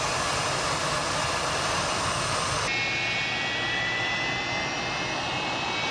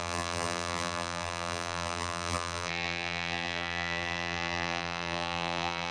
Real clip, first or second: first